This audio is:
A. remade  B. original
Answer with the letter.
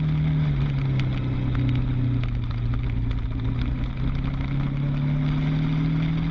B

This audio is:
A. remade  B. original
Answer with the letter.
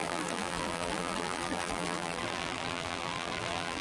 A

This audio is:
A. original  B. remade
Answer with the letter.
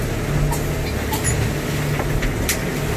A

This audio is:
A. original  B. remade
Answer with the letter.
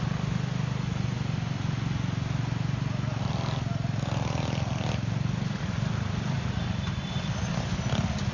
A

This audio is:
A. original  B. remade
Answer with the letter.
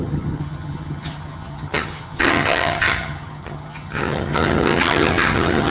B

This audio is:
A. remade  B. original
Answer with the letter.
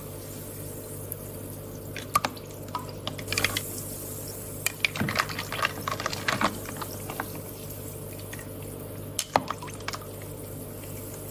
B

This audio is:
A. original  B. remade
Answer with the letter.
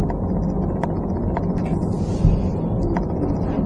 A